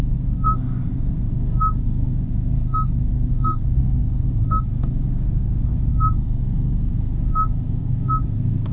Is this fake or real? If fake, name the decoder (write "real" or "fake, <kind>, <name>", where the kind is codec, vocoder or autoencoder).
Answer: fake, codec, SNAC